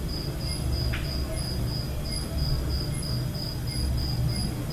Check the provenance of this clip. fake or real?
real